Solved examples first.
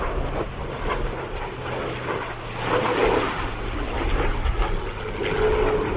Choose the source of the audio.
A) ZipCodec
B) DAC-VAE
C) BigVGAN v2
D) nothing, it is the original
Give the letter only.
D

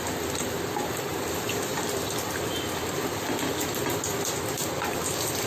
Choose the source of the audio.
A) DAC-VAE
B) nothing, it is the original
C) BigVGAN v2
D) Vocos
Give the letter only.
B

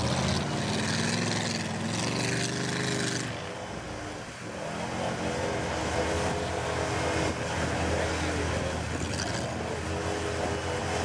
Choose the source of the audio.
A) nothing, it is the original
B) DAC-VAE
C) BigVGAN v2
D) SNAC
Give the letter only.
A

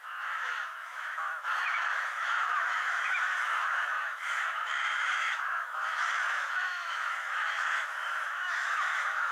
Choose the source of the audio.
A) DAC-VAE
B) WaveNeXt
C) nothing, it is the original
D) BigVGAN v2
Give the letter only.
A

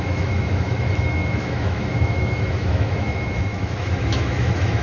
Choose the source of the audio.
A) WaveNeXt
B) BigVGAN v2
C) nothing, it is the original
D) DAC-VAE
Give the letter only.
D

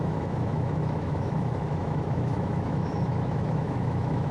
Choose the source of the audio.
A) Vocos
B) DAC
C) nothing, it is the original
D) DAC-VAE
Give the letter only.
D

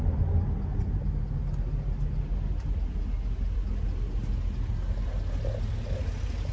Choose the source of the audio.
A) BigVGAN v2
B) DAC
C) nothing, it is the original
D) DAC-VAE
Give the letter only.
C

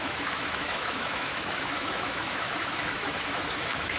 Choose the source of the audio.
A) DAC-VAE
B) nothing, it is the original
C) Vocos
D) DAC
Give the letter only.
A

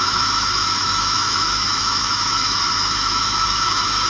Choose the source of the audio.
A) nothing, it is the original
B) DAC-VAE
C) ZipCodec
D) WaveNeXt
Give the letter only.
B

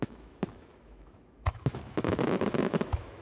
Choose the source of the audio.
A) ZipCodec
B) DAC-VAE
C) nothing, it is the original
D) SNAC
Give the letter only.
B